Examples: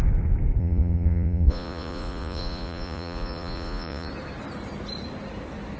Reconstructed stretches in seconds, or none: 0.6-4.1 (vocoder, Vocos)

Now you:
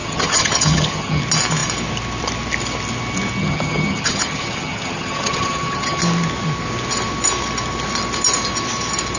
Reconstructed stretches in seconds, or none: 0.0-1.2 (vocoder, HiFi-GAN); 3.4-6.0

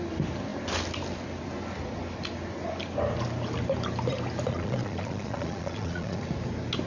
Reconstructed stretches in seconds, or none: 4.5-6.2 (vocoder, Vocos)

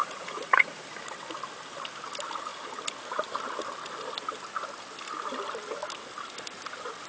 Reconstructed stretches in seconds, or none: 0.0-1.0 (vocoder, Vocos)

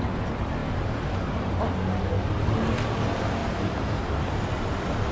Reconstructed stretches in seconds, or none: 0.6-1.5 (vocoder, BigVGAN v2); 3.4-4.2

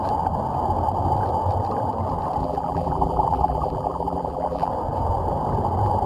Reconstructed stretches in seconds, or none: 2.4-4.7 (vocoder, BigVGAN v2)

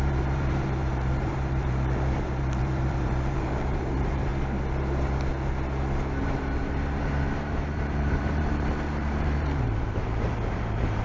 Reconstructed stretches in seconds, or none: 0.0-4.3 (vocoder, BigVGAN v2); 6.2-11.0

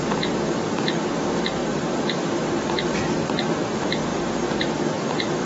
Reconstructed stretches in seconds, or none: 1.6-2.2 (vocoder, BigVGAN v2)